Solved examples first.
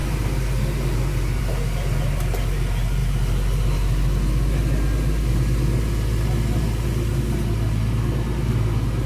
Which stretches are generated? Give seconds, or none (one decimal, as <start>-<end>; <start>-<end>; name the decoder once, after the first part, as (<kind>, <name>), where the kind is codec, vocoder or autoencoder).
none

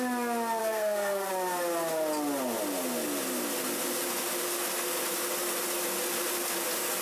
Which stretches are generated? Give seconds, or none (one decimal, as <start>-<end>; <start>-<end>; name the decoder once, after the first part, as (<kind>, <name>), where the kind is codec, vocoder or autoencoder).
0.6-1.3 (codec, SNAC)

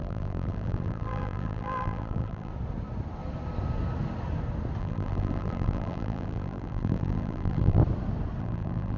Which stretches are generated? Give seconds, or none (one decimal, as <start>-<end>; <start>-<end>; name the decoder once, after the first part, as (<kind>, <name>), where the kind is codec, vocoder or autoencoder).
0.0-2.5 (vocoder, BigVGAN v2); 4.8-7.8; 8.4-9.0

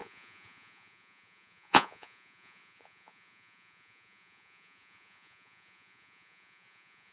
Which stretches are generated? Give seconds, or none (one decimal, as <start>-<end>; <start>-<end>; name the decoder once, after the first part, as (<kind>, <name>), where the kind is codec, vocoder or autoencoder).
0.0-7.1 (vocoder, Vocos)